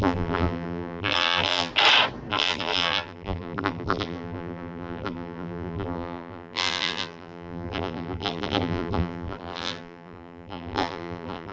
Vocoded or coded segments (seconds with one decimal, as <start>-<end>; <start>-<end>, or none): 0.0-1.7; 2.3-11.5